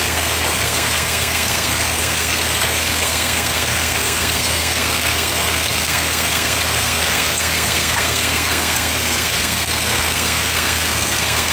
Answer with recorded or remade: remade